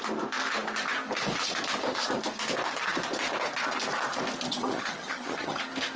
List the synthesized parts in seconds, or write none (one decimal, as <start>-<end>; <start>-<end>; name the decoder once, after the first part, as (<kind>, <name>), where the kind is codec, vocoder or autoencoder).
4.5-5.6 (vocoder, HiFi-GAN)